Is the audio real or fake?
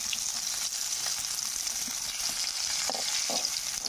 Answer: real